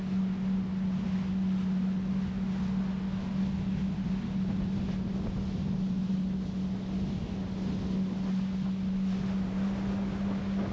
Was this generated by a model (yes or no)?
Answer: no